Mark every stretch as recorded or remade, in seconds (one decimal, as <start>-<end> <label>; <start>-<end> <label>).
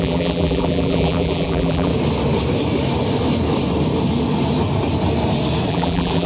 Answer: 0.0-1.9 remade; 1.9-5.7 recorded; 5.7-6.3 remade